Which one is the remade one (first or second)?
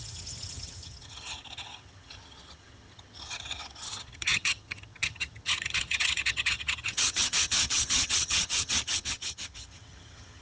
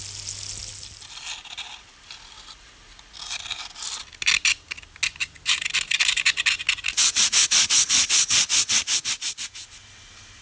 first